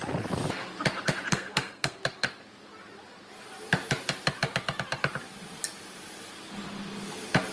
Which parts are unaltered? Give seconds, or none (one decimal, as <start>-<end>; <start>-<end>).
0.0-1.3; 2.0-7.5